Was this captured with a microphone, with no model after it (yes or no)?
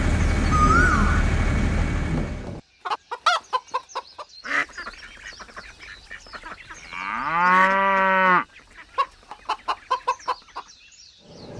yes